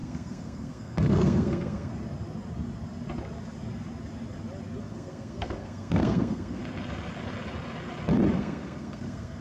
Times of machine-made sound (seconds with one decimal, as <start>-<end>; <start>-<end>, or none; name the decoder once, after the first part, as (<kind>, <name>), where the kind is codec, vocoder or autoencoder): 0.0-1.9 (codec, SNAC); 4.8-6.6; 8.4-9.4